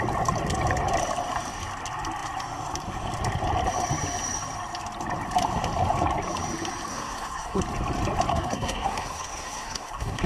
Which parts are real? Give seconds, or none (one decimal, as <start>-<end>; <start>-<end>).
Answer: 0.0-6.9; 7.6-8.3